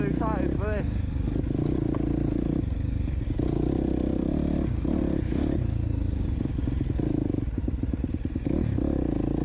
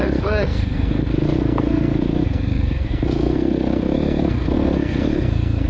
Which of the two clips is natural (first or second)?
first